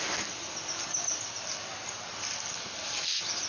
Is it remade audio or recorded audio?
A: recorded